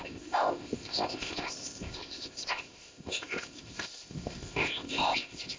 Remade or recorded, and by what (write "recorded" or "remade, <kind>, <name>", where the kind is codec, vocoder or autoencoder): remade, codec, ZipCodec